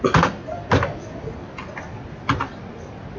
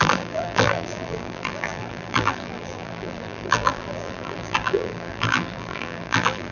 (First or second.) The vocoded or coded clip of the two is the second